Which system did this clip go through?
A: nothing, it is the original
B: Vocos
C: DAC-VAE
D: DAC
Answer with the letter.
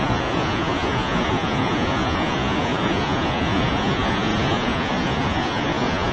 B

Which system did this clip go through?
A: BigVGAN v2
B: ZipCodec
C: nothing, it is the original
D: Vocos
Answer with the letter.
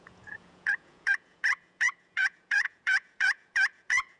D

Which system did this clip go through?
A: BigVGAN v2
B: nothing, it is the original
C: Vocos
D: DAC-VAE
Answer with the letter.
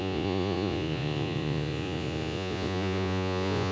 C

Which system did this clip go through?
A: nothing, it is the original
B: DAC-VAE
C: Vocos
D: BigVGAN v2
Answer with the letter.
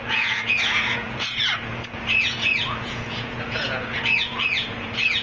C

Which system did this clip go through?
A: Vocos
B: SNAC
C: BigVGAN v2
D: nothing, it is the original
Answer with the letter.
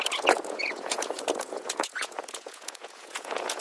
A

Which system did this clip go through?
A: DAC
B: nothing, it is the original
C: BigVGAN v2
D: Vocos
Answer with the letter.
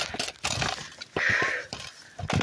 B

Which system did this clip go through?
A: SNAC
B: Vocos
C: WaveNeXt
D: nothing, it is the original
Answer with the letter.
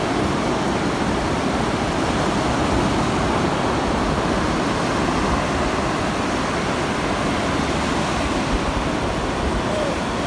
D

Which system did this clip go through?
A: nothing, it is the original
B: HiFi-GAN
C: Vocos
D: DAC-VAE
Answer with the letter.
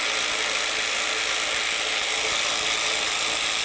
A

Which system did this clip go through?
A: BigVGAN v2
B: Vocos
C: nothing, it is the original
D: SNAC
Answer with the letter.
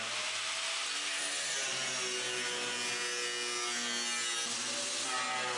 C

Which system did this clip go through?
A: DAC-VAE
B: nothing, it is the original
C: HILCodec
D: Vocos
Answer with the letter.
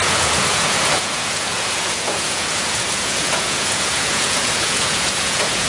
D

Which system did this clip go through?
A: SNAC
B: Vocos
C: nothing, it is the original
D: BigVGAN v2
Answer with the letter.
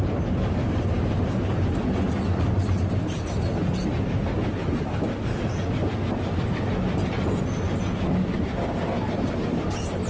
C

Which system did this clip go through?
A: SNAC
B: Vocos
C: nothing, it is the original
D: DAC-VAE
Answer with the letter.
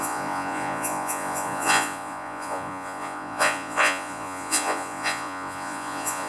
B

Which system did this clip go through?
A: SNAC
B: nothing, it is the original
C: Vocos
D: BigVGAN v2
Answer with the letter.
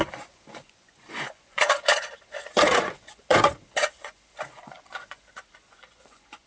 C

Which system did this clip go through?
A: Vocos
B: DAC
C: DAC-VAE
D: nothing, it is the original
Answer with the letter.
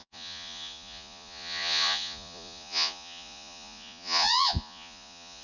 A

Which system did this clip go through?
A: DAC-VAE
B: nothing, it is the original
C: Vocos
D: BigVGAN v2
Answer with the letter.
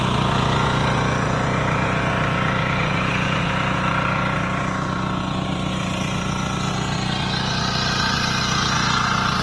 C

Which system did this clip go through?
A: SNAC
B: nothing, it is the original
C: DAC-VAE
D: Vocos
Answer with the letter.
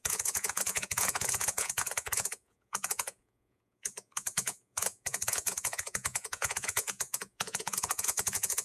D